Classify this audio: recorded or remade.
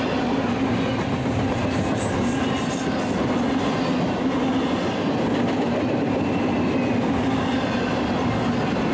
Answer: recorded